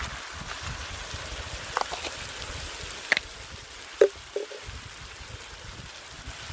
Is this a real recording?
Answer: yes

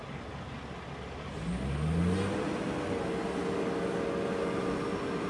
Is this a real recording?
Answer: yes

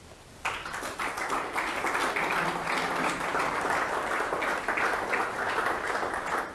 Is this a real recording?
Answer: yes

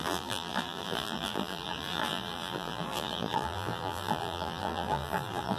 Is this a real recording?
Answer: no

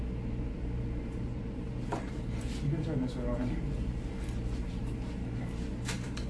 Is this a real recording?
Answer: no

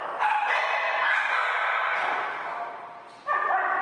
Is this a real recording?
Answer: no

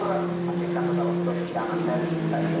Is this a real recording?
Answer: yes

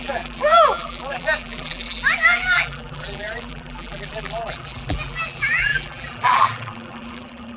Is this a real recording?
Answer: no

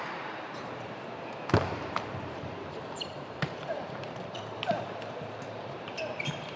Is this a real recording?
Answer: no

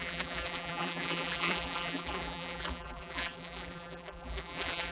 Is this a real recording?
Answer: no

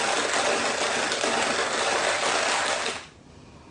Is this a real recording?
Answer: yes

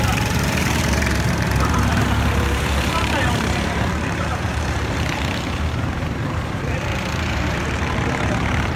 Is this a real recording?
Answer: no